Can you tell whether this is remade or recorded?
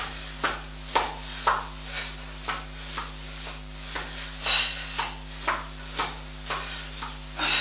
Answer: recorded